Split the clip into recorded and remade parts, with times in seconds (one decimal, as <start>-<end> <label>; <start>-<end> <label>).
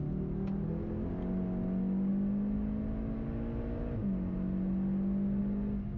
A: 0.0-6.0 recorded